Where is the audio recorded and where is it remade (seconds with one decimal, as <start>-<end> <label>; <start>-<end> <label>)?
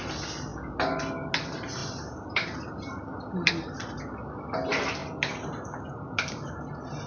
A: 0.0-1.8 recorded; 1.8-3.5 remade; 3.5-7.1 recorded